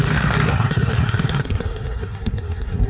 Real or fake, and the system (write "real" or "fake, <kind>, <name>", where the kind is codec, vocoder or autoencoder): fake, codec, SNAC